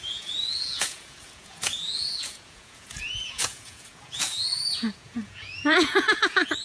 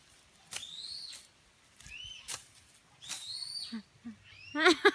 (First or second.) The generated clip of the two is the first